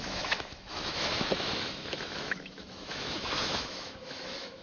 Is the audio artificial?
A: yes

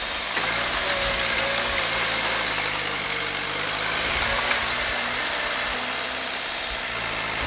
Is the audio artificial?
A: no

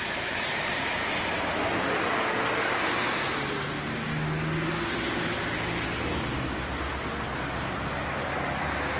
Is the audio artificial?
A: no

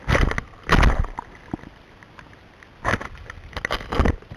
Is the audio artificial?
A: no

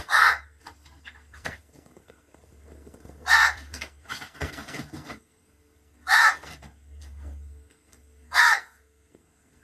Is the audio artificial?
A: yes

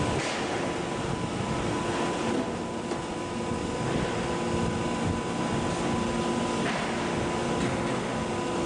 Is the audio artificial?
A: no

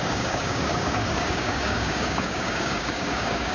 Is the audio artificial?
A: yes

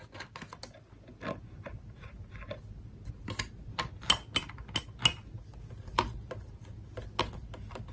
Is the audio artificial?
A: no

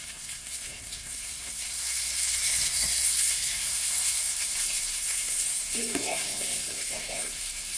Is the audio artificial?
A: yes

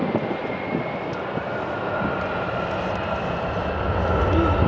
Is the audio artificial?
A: no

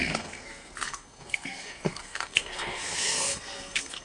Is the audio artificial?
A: yes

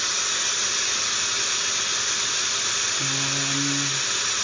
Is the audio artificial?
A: no